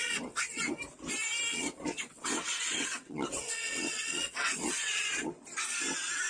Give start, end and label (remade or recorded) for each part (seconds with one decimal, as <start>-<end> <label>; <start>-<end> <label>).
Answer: 0.0-0.8 remade; 0.8-1.5 recorded; 1.5-5.3 remade; 5.3-6.3 recorded